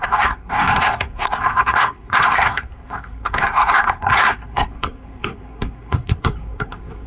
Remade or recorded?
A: remade